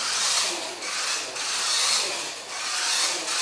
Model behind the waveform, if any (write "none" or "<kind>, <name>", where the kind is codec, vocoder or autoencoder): none